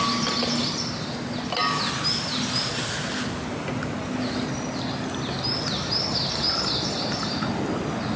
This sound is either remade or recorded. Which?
recorded